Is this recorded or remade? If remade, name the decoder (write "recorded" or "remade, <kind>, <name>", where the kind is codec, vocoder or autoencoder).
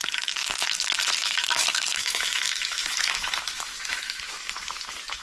remade, autoencoder, DAC-VAE